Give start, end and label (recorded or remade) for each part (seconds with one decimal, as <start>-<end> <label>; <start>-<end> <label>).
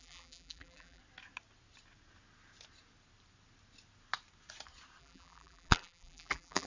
0.0-1.0 remade; 1.0-5.0 recorded; 5.0-6.7 remade